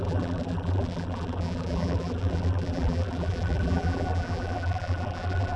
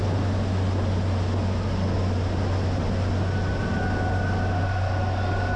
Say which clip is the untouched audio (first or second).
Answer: second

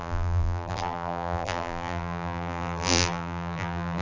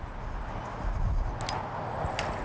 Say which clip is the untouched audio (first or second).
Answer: second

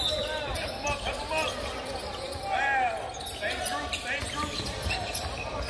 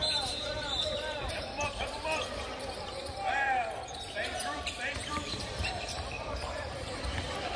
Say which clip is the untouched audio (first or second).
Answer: first